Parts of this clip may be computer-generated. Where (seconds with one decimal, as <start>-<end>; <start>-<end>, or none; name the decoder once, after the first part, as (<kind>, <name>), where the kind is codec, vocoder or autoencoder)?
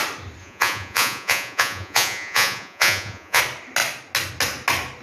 0.4-3.4 (vocoder, Vocos)